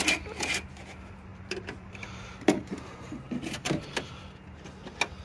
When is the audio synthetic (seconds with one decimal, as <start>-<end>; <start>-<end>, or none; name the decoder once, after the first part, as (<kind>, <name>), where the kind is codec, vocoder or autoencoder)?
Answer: 1.3-4.1 (vocoder, BigVGAN v2)